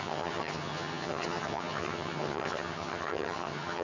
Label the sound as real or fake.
fake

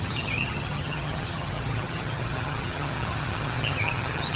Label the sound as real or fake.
fake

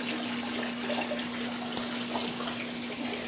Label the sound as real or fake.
real